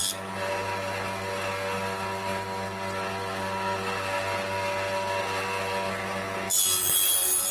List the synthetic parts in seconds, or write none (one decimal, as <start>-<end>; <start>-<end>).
none